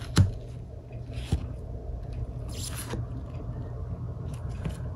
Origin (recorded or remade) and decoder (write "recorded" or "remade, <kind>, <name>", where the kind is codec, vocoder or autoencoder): recorded